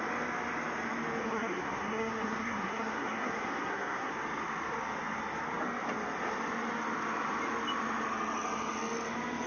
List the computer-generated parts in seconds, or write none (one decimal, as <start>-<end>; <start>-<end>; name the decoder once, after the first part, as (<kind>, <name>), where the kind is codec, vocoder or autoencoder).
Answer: 1.2-4.1 (codec, SNAC)